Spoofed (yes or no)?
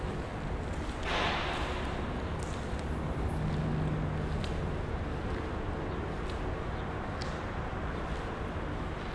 no